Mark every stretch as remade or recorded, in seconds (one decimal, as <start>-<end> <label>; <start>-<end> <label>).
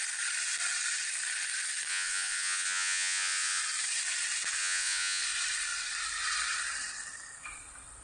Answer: 0.0-1.9 recorded; 1.9-3.6 remade; 3.6-4.6 recorded; 4.6-5.2 remade; 5.2-8.0 recorded